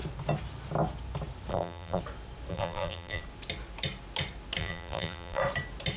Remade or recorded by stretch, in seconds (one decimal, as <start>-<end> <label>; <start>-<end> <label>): 0.0-1.5 recorded; 1.5-2.0 remade; 2.0-2.5 recorded; 2.5-3.2 remade; 3.2-4.6 recorded; 4.6-5.4 remade; 5.4-6.0 recorded